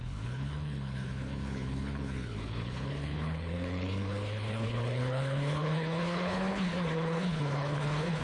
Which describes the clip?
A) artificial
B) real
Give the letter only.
A